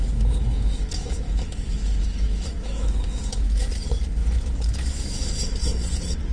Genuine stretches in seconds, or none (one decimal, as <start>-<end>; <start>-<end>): 3.7-4.2; 5.4-6.3